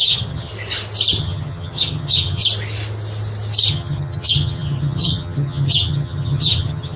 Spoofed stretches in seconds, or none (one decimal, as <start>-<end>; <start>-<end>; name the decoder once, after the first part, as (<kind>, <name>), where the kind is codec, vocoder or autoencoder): 0.0-0.5 (vocoder, HiFi-GAN); 1.2-2.4; 3.7-7.0